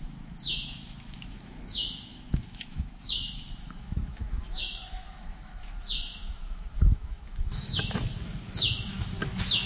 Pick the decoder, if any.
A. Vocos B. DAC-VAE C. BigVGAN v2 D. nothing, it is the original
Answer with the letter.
B